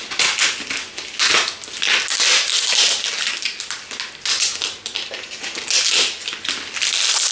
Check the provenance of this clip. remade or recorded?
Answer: recorded